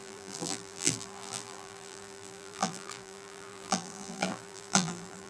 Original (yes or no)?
no